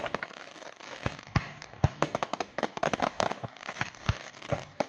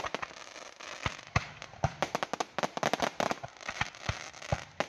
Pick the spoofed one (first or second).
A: first